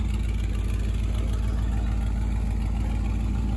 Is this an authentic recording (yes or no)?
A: yes